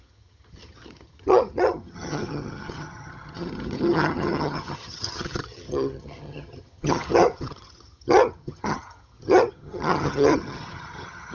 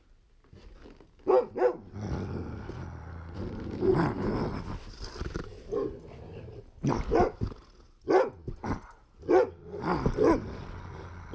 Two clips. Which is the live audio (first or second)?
second